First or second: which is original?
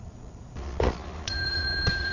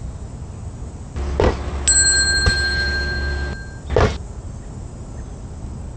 second